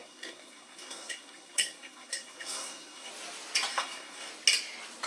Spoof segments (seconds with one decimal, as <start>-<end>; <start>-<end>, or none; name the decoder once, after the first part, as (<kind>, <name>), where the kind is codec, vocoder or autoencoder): 0.0-3.1 (codec, SNAC); 3.7-4.3